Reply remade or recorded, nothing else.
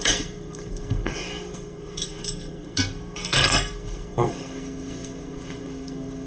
remade